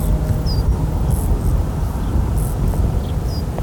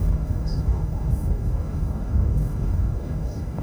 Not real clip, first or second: second